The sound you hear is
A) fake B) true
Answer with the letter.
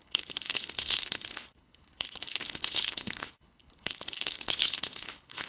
A